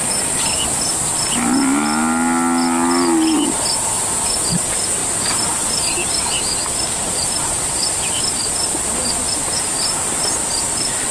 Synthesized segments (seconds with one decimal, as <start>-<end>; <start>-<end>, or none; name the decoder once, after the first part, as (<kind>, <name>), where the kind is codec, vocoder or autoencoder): none